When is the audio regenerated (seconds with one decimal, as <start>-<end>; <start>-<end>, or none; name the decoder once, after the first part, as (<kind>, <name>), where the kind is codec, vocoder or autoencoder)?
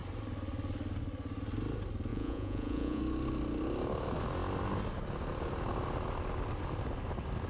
2.1-3.0 (vocoder, Vocos)